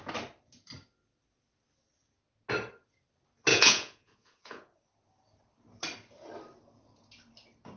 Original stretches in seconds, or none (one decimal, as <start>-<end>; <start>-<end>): 0.0-3.5; 4.8-7.8